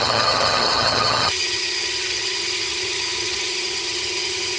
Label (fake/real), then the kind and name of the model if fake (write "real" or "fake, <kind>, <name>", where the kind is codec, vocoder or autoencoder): fake, vocoder, HiFi-GAN